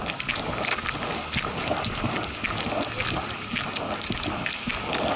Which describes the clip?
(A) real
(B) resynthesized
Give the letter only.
A